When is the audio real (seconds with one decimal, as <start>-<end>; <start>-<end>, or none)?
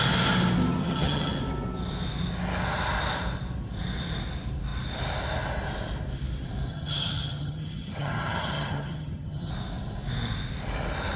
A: 0.0-0.8; 1.4-6.7; 9.5-11.2